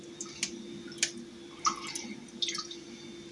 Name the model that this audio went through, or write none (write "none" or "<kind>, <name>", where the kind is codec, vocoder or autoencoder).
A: none